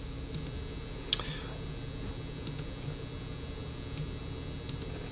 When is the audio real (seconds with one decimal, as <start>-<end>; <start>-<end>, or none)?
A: 0.0-5.1